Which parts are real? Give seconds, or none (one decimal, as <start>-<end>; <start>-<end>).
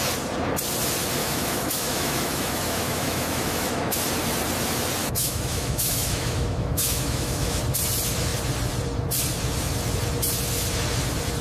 0.0-1.2; 4.1-5.0; 7.6-11.4